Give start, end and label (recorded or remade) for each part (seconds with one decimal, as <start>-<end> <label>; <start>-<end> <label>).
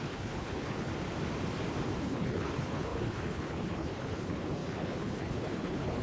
0.0-0.9 remade; 0.9-2.0 recorded; 2.0-6.0 remade